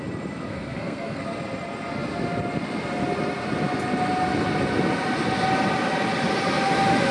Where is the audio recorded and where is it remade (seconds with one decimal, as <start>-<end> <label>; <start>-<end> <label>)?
0.0-0.5 recorded; 0.5-1.2 remade; 1.2-7.1 recorded